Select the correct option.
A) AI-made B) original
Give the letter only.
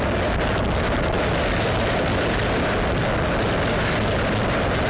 B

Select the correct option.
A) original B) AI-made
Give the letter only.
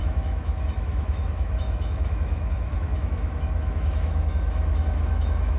B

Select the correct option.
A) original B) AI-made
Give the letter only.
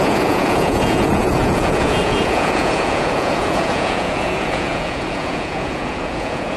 B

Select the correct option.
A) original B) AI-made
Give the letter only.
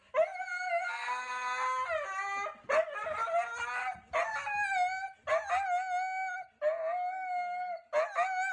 A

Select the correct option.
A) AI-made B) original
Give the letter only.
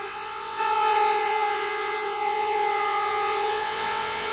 A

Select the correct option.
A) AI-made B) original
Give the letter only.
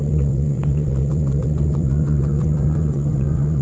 A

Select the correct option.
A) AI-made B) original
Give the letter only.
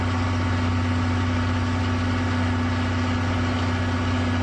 B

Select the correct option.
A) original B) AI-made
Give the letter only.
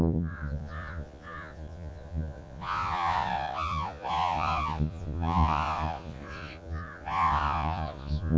B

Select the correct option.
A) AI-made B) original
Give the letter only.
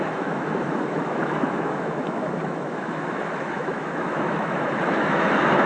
A